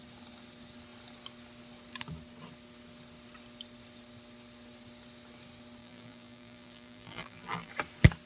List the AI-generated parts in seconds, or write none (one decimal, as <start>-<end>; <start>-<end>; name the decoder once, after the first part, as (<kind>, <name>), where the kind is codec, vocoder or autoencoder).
5.8-7.7 (vocoder, BigVGAN v2)